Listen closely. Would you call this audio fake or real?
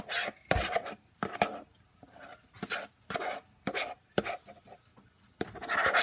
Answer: real